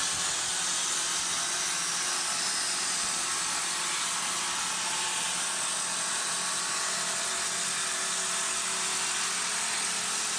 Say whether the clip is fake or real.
real